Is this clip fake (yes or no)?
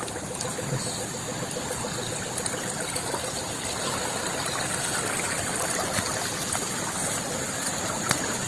no